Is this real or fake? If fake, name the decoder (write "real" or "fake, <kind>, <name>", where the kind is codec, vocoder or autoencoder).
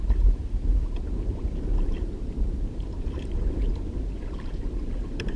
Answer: fake, vocoder, BigVGAN v2